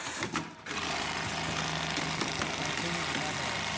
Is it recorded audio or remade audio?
recorded